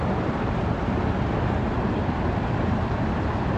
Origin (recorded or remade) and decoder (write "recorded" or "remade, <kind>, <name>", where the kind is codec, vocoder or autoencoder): recorded